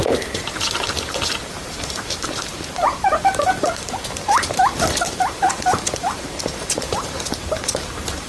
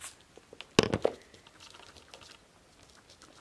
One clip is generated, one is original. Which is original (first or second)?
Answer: second